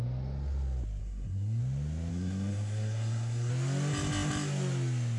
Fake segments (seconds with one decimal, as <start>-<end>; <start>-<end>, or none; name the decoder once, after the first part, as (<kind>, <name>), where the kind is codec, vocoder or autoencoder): 1.0-1.6 (codec, SNAC); 2.1-3.5